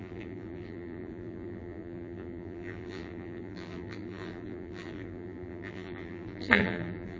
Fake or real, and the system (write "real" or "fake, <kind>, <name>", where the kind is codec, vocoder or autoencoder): fake, vocoder, BigVGAN v2